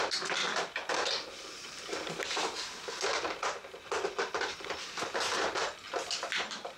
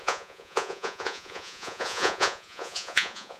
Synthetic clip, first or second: second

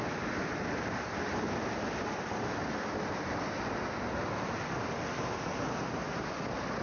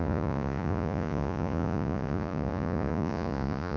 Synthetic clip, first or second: second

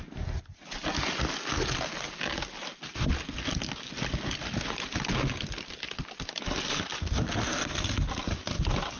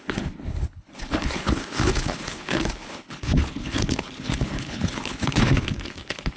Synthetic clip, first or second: second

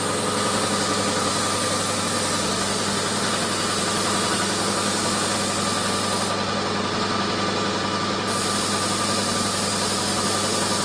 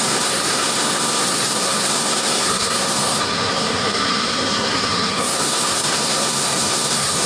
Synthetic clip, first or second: second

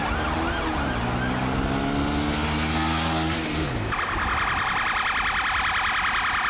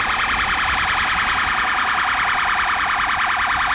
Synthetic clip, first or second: second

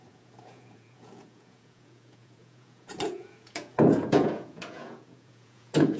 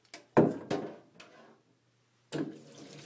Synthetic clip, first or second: first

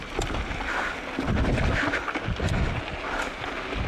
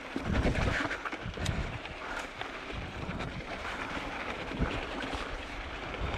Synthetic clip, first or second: second